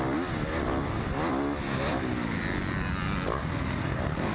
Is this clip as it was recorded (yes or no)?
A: yes